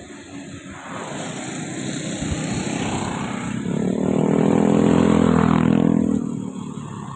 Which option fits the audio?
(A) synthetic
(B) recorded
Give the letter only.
B